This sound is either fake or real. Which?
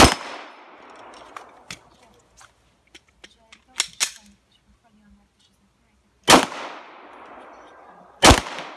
real